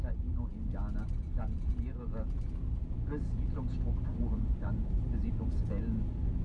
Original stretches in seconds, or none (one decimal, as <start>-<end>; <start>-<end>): 0.0-4.1; 5.6-6.4